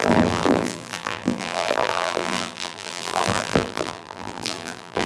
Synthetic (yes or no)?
yes